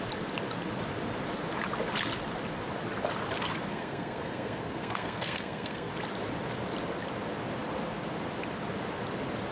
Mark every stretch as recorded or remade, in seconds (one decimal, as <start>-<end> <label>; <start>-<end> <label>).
0.0-3.7 recorded; 3.7-5.9 remade; 5.9-9.5 recorded